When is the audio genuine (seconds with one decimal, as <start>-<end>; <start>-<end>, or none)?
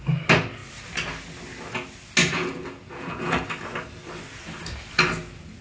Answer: 0.0-2.2; 3.5-5.6